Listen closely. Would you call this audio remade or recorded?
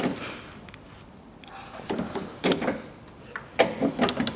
recorded